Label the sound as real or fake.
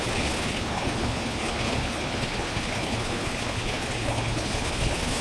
fake